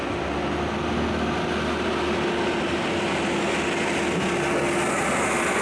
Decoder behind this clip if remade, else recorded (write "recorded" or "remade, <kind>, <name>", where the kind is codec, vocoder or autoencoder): recorded